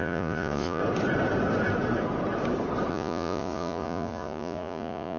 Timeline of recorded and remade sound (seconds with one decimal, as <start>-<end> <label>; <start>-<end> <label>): 0.0-0.8 remade; 0.8-2.9 recorded; 2.9-5.2 remade